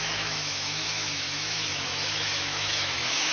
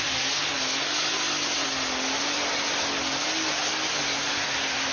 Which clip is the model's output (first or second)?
first